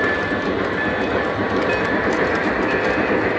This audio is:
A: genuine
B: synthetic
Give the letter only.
A